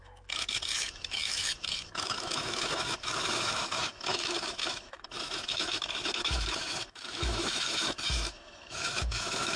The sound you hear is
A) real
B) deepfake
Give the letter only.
B